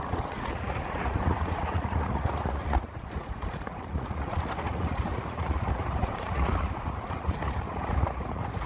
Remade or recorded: remade